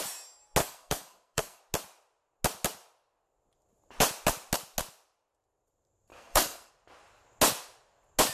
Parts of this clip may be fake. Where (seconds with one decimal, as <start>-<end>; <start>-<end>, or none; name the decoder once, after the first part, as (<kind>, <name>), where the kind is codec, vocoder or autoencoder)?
0.6-1.6 (codec, SNAC); 6.1-6.7